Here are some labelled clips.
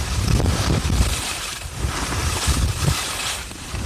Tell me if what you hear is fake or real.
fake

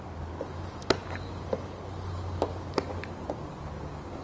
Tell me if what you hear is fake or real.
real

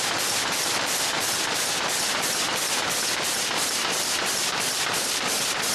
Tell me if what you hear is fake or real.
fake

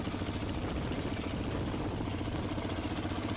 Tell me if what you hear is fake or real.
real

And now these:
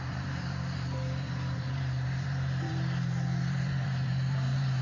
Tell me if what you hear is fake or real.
fake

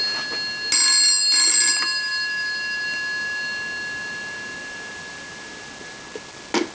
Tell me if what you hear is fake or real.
real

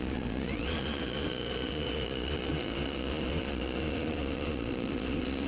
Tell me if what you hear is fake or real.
fake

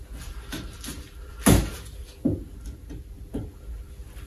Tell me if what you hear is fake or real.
real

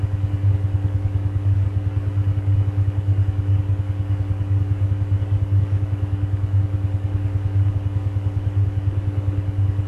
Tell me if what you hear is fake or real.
fake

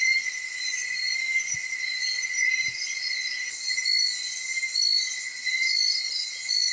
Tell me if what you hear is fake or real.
real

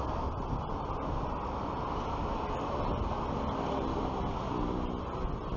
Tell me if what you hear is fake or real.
real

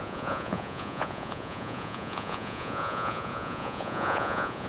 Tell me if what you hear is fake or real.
fake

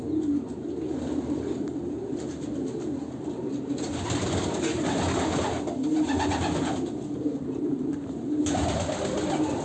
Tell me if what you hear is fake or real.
real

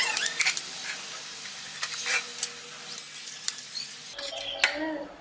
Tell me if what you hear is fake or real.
real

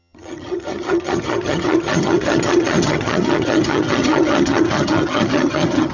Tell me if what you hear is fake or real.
fake